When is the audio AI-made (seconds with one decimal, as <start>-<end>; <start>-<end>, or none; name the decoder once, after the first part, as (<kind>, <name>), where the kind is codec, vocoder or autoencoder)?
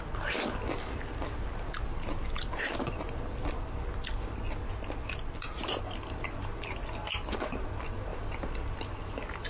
none